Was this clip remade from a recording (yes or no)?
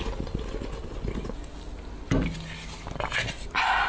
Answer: no